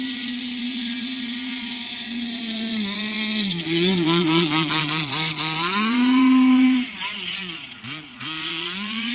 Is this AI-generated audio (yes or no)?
yes